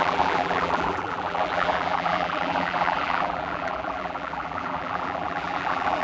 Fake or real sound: fake